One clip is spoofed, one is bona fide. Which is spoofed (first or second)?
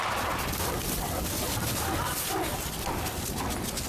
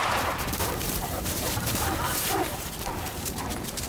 second